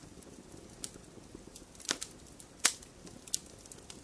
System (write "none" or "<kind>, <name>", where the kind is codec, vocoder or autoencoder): none